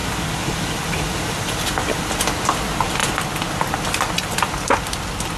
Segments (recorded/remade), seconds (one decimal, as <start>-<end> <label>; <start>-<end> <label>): 0.0-5.4 recorded

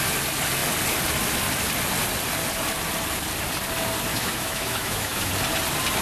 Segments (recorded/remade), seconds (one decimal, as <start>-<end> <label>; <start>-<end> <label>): 0.0-4.1 recorded; 4.1-5.3 remade; 5.3-6.0 recorded

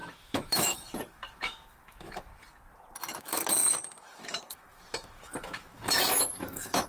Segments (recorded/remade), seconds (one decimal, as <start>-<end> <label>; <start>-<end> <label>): 0.0-2.3 remade; 2.3-3.2 recorded; 3.2-6.9 remade

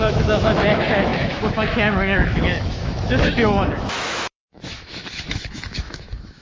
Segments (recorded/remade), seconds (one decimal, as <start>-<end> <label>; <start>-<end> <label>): 0.0-6.4 remade

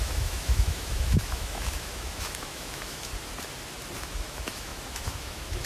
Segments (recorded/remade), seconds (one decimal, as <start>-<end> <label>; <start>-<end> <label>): 0.0-3.1 remade; 3.1-4.0 recorded; 4.0-5.7 remade

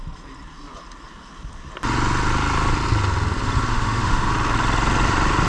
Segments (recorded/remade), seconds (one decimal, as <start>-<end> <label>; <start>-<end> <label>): 0.0-3.7 recorded; 3.7-4.3 remade; 4.3-5.5 recorded